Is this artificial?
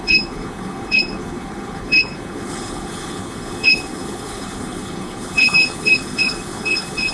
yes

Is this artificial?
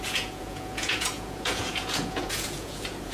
yes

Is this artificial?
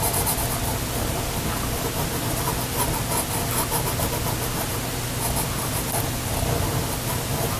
no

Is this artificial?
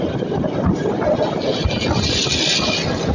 no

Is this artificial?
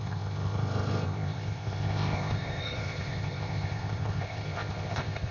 yes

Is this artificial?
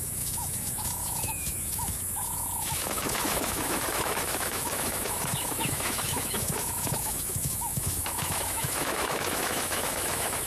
yes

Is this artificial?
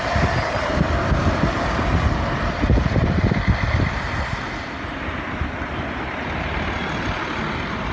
no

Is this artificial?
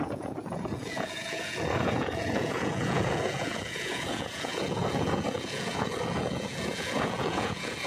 yes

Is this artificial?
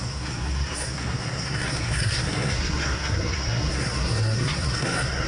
yes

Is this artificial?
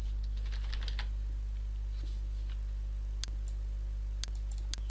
no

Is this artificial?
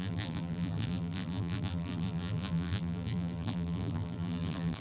yes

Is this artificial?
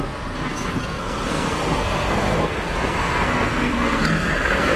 yes